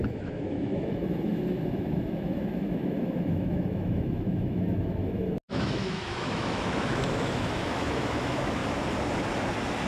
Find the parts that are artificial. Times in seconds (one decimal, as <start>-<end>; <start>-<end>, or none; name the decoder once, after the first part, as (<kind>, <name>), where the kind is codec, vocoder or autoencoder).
0.0-8.6 (autoencoder, DAC-VAE)